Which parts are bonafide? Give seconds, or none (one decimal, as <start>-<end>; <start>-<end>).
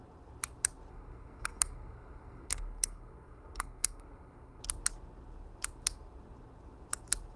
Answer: 0.0-0.9; 4.6-7.4